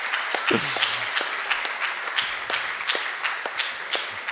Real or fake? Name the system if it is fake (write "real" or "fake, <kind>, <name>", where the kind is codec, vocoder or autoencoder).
real